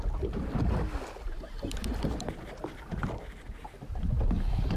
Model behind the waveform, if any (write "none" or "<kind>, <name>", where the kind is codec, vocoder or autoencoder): none